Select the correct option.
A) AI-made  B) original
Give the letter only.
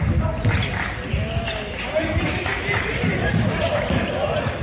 B